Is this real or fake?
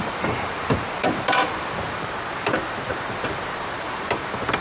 fake